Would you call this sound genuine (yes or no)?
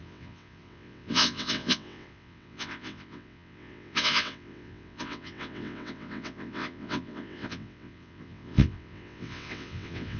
no